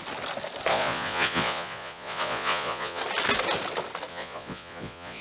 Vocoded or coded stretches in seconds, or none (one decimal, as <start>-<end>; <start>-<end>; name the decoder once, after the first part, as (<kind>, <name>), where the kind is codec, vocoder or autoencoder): 0.7-3.0 (vocoder, Vocos); 4.1-5.2

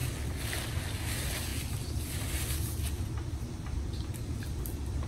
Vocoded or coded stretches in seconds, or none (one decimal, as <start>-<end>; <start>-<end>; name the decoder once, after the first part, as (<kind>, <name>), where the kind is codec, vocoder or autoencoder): none

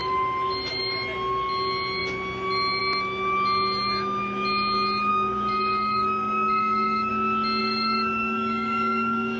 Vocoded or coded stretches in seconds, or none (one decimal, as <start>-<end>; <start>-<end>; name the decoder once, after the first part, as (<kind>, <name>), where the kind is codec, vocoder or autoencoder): 5.1-7.1 (codec, DAC); 7.6-9.4

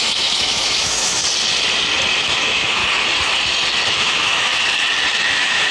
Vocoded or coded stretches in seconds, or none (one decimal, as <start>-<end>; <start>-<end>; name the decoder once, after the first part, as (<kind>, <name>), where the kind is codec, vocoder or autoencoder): 0.0-1.2 (autoencoder, DAC-VAE); 2.2-2.8; 3.9-4.5; 5.1-5.7

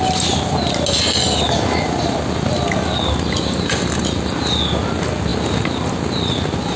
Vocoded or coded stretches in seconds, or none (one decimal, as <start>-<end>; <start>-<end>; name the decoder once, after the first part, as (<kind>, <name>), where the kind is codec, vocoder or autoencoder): none